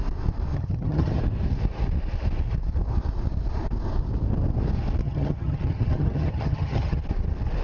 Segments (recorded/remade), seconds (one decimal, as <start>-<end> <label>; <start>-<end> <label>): 0.0-0.5 recorded; 0.5-1.2 remade; 1.2-5.0 recorded; 5.0-7.0 remade; 7.0-7.6 recorded

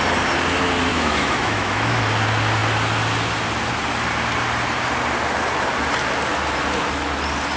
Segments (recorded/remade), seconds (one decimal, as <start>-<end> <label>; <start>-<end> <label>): 0.0-0.9 recorded; 0.9-2.0 remade; 2.0-7.6 recorded